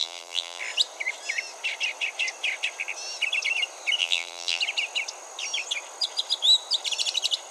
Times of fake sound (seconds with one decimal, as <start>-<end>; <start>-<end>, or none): 0.0-0.6; 4.0-4.6